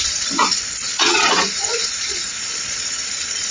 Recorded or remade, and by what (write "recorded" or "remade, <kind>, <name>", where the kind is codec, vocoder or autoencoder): remade, vocoder, Vocos